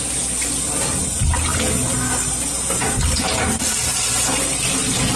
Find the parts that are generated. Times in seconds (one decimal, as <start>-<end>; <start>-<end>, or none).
none